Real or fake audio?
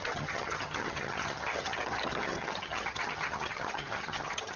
fake